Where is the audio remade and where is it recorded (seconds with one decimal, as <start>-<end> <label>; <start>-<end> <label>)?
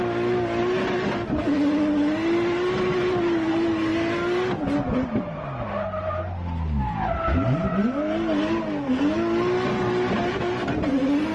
0.0-11.3 recorded